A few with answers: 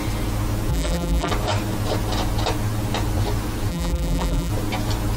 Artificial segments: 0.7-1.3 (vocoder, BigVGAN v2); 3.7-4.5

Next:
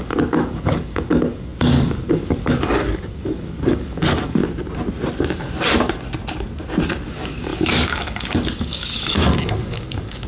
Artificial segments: 0.0-4.4 (codec, DAC); 7.1-10.3